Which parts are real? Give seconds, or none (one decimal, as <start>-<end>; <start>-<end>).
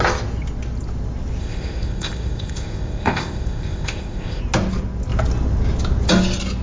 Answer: 0.0-1.4; 4.4-6.6